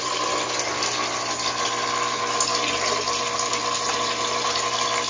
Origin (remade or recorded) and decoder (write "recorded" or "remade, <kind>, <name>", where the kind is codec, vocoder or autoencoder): recorded